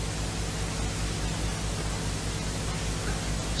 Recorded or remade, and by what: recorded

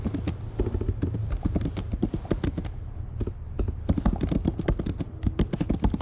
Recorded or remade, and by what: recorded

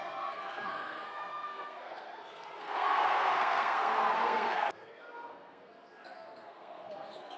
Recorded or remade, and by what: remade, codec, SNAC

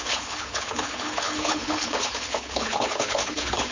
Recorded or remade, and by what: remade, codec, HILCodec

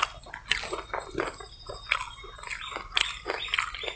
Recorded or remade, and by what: recorded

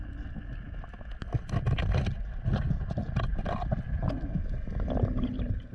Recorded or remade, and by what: recorded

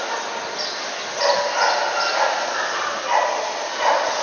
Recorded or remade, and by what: recorded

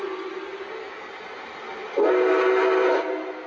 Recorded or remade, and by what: recorded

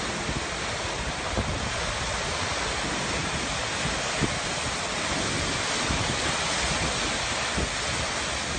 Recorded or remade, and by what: recorded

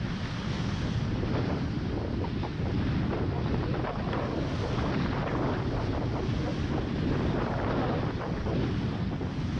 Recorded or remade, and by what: recorded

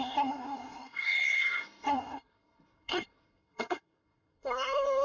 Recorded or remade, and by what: remade, codec, SNAC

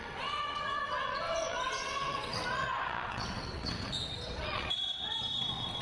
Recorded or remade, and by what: remade, vocoder, WaveNeXt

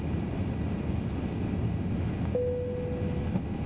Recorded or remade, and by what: recorded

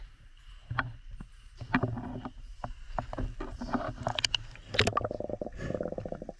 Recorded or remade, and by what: recorded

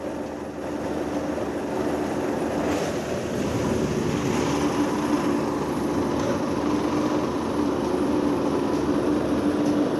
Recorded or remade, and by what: recorded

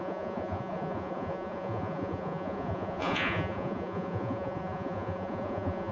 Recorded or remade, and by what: remade, vocoder, Vocos